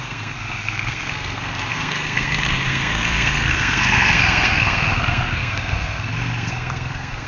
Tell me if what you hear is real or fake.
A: fake